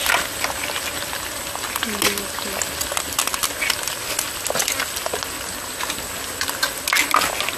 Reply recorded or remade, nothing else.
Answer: recorded